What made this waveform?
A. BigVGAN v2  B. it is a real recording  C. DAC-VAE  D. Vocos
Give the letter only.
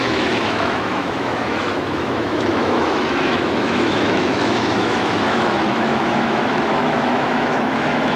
C